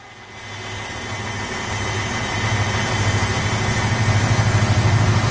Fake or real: real